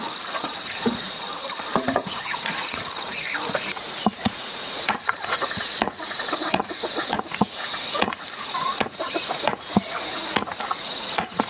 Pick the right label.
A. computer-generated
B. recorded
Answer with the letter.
A